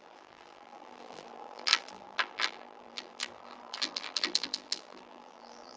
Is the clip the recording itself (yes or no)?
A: no